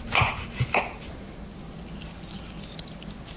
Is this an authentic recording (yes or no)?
yes